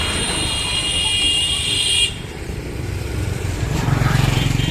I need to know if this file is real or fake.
fake